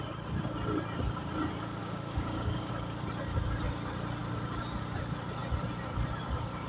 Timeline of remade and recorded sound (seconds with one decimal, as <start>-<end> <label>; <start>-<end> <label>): 0.0-1.8 recorded; 1.8-2.7 remade; 2.7-6.7 recorded